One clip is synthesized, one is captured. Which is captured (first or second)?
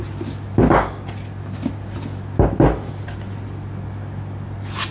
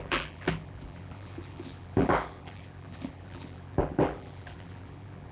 first